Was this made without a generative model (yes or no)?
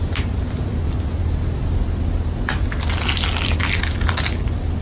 yes